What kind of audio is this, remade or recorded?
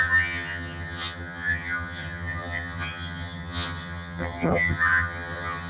remade